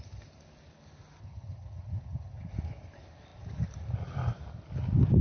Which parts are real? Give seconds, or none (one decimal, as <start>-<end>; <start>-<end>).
0.0-1.2; 2.5-5.2